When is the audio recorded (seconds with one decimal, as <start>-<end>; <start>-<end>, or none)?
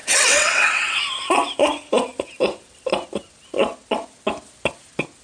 1.0-5.2